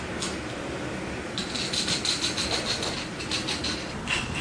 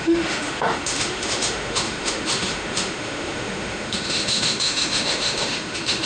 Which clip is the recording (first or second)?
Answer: first